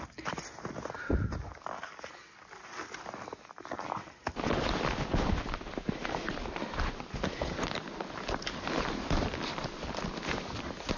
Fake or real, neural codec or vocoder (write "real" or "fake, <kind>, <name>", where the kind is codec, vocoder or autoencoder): real